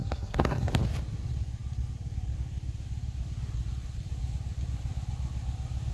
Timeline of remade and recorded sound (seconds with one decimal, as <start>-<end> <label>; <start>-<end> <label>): 0.0-0.7 remade; 0.7-5.9 recorded